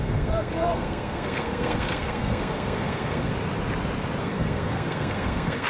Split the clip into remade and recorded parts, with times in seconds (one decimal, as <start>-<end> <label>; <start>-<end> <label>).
0.0-3.3 remade; 3.3-4.2 recorded; 4.2-5.7 remade